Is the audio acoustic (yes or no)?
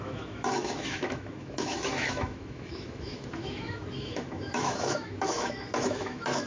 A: no